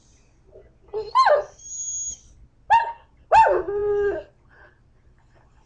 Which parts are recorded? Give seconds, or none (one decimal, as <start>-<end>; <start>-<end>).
0.0-5.7